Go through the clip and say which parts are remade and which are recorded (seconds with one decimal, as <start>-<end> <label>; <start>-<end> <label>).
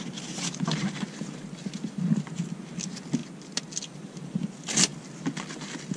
0.0-6.0 recorded